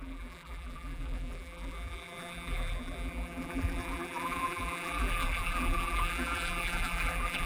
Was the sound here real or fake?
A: fake